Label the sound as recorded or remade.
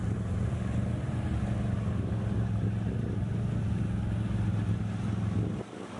recorded